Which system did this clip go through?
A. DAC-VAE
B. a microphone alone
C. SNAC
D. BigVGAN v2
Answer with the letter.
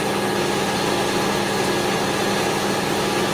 B